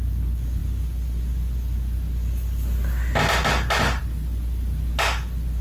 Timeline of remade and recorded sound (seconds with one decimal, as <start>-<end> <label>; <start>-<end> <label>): 0.0-5.6 recorded

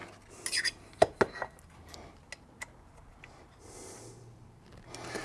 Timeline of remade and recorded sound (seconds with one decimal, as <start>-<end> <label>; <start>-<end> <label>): 0.0-5.2 recorded

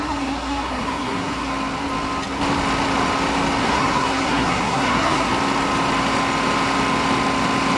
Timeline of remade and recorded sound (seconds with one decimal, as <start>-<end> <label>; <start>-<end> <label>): 0.0-1.5 remade; 1.5-3.6 recorded; 3.6-5.3 remade; 5.3-7.8 recorded

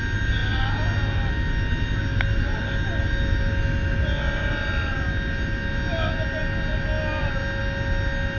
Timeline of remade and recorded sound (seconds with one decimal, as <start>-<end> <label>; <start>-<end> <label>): 0.0-8.4 recorded

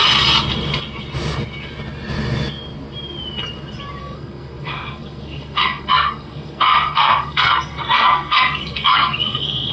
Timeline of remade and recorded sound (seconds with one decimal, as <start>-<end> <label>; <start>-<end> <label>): 0.0-4.0 recorded; 4.0-9.7 remade

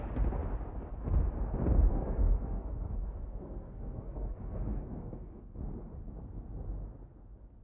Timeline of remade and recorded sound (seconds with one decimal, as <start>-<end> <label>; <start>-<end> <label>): 0.0-1.9 recorded; 1.9-5.6 remade; 5.6-7.6 recorded

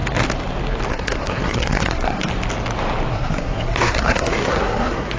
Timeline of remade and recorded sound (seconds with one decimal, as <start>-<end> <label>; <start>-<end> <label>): 0.0-0.9 recorded; 0.9-2.3 remade; 2.3-3.1 recorded; 3.1-5.2 remade

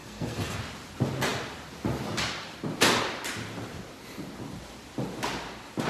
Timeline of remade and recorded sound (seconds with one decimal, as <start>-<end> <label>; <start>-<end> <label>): 0.0-0.6 remade; 0.6-5.9 recorded